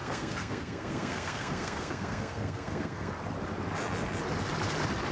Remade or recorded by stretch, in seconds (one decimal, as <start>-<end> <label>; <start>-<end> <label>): 0.0-3.1 remade; 3.1-5.1 recorded